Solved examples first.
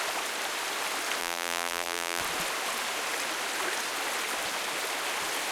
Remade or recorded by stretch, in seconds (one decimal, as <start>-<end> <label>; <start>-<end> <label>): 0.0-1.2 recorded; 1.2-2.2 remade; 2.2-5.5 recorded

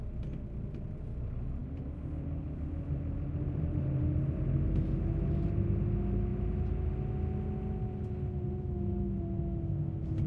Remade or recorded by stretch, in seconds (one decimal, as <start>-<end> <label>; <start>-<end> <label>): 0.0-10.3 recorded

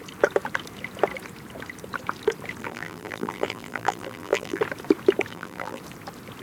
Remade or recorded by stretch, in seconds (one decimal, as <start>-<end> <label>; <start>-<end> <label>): 0.0-2.6 recorded; 2.6-4.6 remade; 4.6-5.3 recorded; 5.3-5.8 remade; 5.8-6.4 recorded

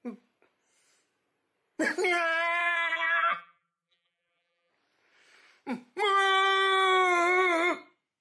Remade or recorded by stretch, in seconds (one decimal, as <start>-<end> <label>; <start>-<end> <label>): 0.0-2.6 recorded; 2.6-4.7 remade; 4.7-8.2 recorded

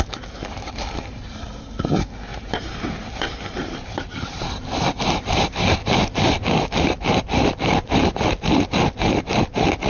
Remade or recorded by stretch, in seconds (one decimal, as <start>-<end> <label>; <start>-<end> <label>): 0.0-2.3 recorded; 2.3-4.3 remade; 4.3-9.9 recorded

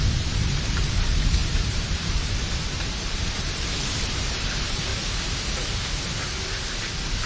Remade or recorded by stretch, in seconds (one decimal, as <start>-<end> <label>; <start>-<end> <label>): 0.0-4.9 remade; 4.9-7.3 recorded

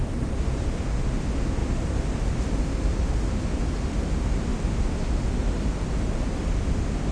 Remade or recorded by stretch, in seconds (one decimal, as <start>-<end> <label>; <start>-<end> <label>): 0.0-0.7 remade; 0.7-7.1 recorded